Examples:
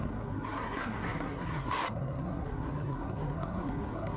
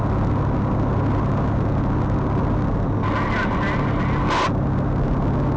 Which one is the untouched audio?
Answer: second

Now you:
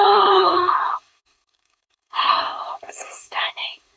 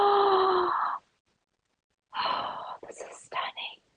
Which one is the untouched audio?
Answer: second